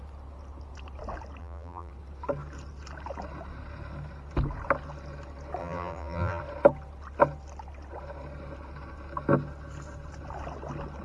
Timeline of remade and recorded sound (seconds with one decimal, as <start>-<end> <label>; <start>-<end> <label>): 0.0-1.4 recorded; 1.4-1.9 remade; 1.9-5.6 recorded; 5.6-6.4 remade; 6.4-11.0 recorded